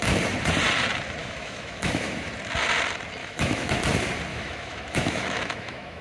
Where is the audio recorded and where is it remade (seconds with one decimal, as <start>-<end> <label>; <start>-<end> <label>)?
0.0-1.2 recorded; 1.2-2.3 remade; 2.3-3.2 recorded; 3.2-3.8 remade; 3.8-4.3 recorded; 4.3-6.0 remade

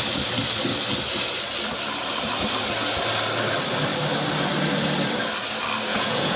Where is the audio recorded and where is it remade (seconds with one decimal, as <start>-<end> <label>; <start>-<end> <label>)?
0.0-5.9 recorded; 5.9-6.4 remade

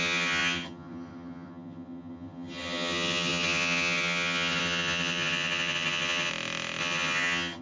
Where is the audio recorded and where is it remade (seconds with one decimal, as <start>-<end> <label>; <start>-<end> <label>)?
0.0-6.3 remade; 6.3-6.8 recorded; 6.8-7.6 remade

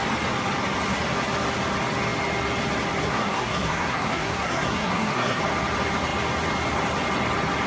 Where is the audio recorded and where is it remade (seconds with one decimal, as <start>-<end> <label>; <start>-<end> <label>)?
0.0-3.0 recorded; 3.0-5.4 remade; 5.4-7.7 recorded

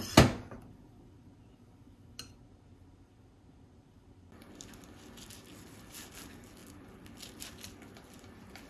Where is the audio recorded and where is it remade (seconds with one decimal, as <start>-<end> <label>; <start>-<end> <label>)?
0.0-8.7 recorded